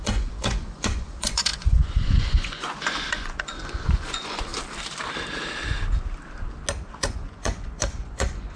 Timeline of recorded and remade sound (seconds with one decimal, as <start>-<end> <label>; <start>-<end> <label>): 0.0-4.5 remade; 4.5-6.9 recorded; 6.9-8.6 remade